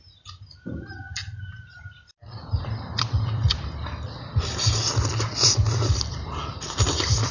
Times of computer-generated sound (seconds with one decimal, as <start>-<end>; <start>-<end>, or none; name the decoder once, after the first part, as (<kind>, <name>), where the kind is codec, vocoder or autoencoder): 0.0-1.2 (vocoder, BigVGAN v2); 1.8-7.3